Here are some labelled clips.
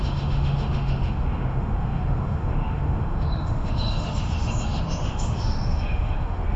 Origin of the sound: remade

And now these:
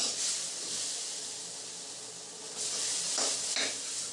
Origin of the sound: recorded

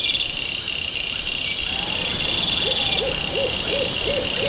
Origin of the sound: recorded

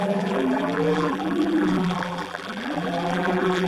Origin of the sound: remade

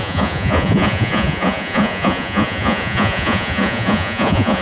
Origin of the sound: remade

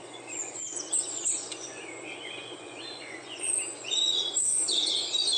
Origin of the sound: remade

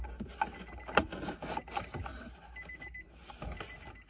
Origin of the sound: recorded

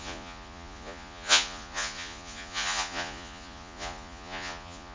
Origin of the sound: remade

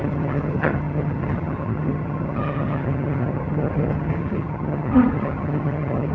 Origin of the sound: remade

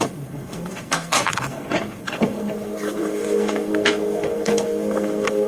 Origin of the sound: remade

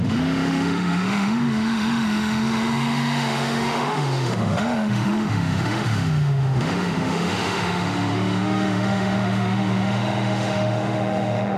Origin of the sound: remade